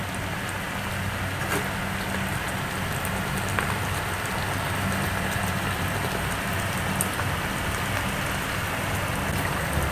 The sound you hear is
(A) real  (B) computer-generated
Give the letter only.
A